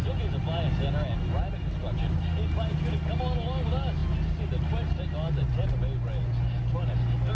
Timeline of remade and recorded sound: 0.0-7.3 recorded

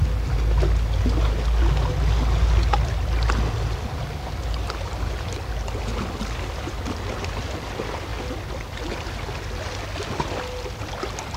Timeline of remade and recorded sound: 0.0-11.4 recorded

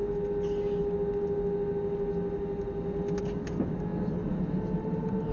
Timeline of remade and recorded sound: 0.0-5.3 recorded